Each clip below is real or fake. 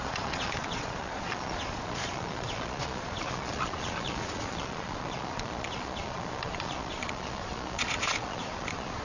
fake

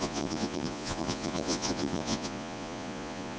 fake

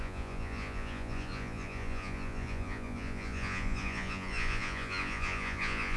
fake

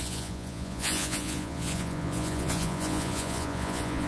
fake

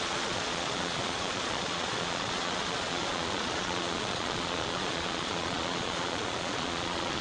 fake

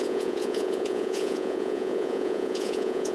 fake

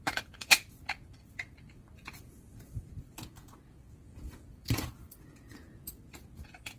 fake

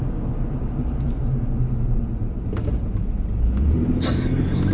real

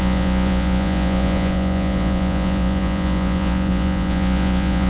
fake